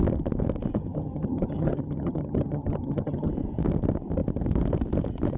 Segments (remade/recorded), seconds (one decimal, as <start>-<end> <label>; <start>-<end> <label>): 0.0-0.8 recorded; 0.8-3.3 remade; 3.3-5.4 recorded